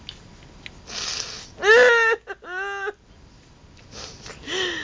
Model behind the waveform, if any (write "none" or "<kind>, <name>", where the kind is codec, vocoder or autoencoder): none